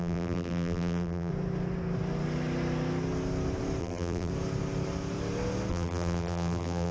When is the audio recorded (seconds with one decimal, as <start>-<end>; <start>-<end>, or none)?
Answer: 1.3-3.8; 4.3-5.7